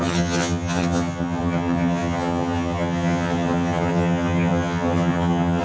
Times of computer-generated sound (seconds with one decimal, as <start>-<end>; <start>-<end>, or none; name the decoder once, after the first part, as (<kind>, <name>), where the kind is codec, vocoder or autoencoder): 0.0-5.6 (vocoder, HiFi-GAN)